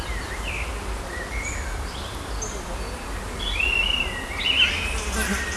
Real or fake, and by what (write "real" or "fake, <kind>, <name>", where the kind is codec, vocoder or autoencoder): real